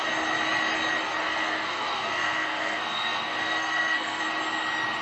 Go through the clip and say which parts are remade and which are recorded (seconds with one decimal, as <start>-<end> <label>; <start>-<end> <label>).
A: 0.0-1.2 recorded; 1.2-4.2 remade; 4.2-5.0 recorded